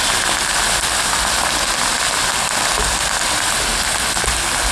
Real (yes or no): yes